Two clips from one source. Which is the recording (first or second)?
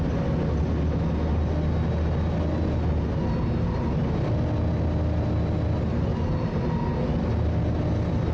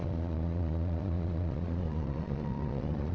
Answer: first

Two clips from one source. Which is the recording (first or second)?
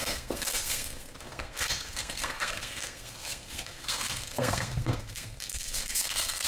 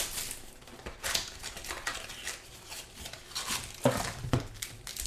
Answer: second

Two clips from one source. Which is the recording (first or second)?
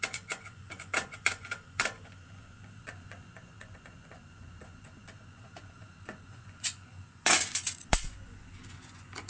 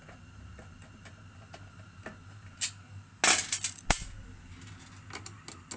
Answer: second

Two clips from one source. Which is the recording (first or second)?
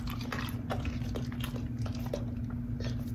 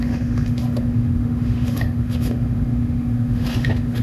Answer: first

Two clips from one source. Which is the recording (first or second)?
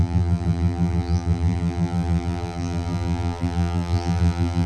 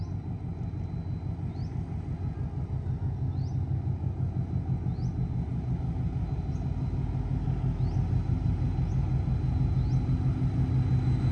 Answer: second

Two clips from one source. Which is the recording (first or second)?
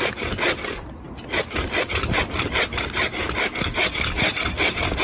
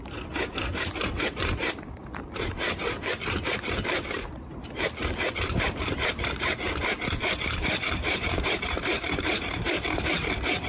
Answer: first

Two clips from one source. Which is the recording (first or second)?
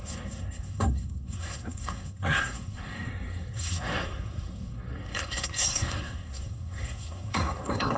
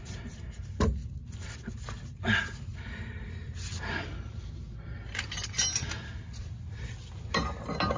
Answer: second